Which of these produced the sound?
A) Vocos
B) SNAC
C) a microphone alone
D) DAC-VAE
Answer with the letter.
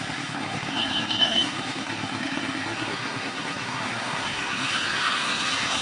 B